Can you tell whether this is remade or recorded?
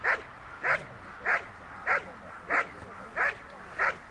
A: recorded